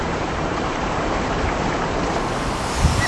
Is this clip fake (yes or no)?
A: yes